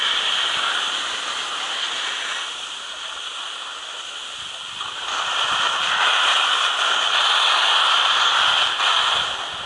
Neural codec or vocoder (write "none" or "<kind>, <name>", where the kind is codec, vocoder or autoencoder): none